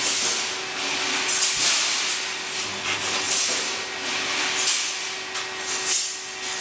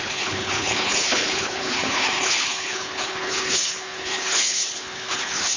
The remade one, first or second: second